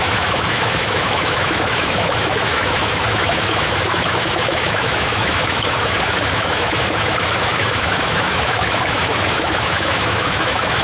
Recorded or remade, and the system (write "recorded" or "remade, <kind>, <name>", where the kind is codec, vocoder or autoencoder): remade, autoencoder, DAC-VAE